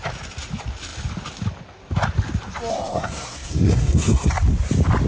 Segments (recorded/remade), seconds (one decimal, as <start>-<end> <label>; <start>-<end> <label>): 0.0-2.7 recorded; 2.7-4.3 remade; 4.3-5.1 recorded